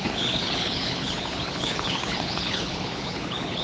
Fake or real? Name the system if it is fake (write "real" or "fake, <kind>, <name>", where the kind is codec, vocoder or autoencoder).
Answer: fake, codec, HILCodec